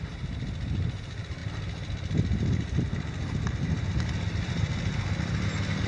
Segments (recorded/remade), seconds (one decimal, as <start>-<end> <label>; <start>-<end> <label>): 0.0-1.4 recorded; 1.4-2.8 remade; 2.8-5.9 recorded